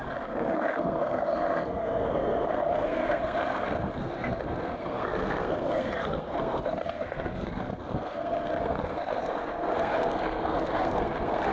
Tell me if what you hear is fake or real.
fake